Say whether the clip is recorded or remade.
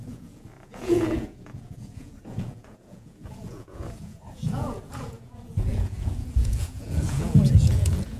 remade